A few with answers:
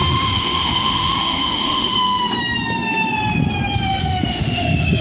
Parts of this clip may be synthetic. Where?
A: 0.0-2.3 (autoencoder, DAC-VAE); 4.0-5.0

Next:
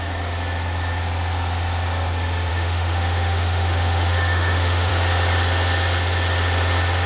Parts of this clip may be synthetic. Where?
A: 2.5-4.9 (autoencoder, DAC-VAE)